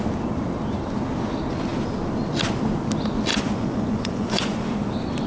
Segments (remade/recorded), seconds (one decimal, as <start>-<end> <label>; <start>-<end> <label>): 0.0-3.3 recorded; 3.3-4.7 remade; 4.7-5.3 recorded